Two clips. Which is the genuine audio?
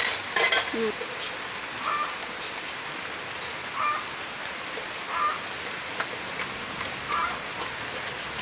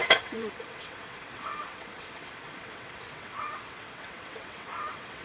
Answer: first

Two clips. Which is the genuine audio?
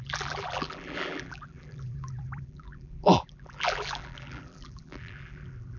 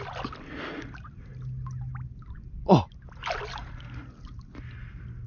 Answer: second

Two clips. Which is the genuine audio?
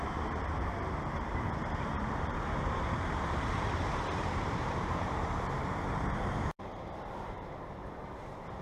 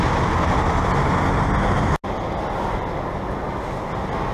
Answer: second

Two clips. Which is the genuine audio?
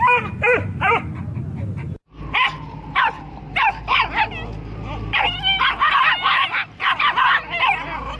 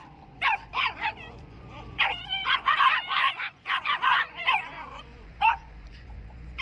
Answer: first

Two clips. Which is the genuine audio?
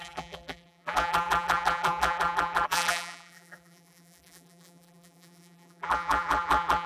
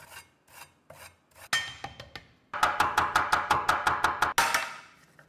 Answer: second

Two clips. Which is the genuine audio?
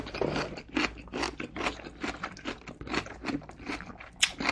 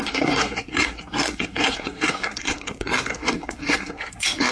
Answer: first